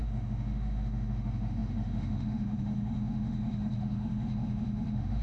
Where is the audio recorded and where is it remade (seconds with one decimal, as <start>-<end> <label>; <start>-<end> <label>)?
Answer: 0.0-5.2 remade